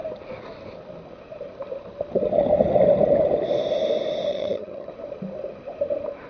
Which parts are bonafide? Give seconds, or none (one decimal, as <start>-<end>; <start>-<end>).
0.0-4.3; 4.9-6.3

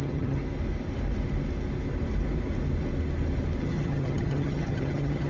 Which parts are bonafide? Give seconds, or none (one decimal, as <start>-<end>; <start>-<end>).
0.4-3.6

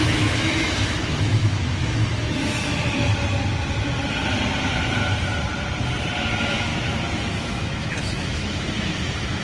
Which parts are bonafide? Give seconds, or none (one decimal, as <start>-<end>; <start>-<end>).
3.1-6.3; 6.7-7.2

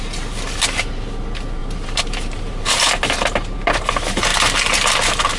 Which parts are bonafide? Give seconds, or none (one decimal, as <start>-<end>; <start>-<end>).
0.0-1.6; 3.9-4.3

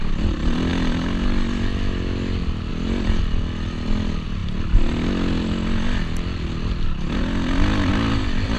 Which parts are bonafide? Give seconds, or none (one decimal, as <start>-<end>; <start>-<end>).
0.0-8.6

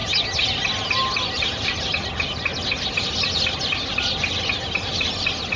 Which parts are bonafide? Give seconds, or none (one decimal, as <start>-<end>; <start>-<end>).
0.0-5.6

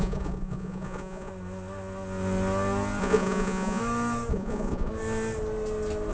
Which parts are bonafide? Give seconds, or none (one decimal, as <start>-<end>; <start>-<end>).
1.3-3.0; 3.8-4.3; 4.9-6.1

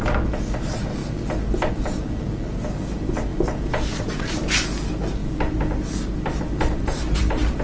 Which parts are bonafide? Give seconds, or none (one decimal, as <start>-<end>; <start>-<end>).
0.0-7.6